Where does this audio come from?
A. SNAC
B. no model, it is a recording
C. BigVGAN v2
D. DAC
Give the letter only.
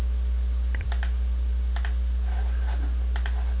C